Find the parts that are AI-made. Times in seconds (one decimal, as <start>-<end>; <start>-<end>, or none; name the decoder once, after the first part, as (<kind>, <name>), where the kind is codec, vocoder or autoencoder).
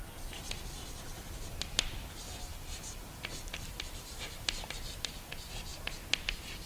2.5-4.7 (vocoder, BigVGAN v2)